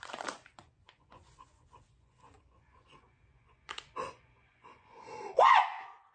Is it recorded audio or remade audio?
remade